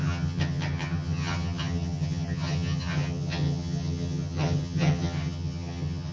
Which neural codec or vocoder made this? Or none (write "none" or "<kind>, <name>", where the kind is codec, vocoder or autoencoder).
vocoder, HiFi-GAN